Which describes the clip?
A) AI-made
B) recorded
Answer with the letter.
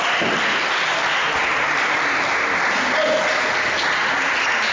B